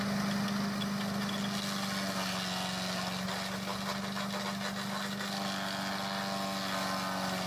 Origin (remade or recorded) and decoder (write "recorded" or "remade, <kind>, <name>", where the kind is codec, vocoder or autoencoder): recorded